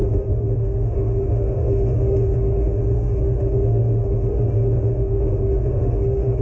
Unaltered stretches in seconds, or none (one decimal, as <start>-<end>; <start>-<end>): none